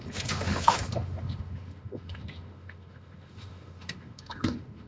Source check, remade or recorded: remade